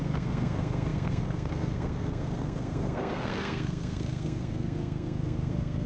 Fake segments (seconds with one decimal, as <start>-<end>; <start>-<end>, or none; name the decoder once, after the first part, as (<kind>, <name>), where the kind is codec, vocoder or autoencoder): 0.0-5.9 (codec, SNAC)